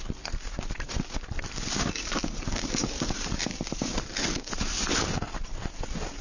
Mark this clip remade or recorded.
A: recorded